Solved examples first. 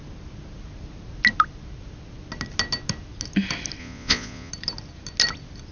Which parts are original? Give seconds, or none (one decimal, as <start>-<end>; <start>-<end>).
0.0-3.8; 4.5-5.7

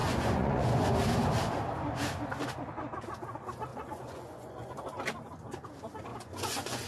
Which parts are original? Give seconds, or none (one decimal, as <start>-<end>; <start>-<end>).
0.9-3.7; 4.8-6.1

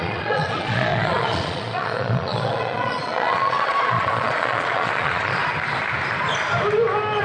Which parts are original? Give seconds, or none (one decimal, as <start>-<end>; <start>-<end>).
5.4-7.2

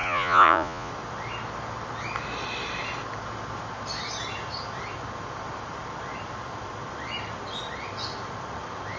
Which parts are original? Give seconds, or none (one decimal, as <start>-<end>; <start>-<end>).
0.9-9.0

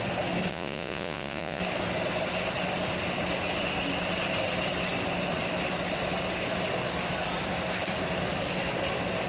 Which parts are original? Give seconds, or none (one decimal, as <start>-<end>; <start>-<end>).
0.0-0.5; 1.6-9.3